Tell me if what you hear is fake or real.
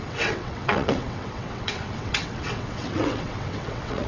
fake